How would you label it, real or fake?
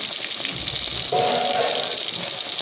real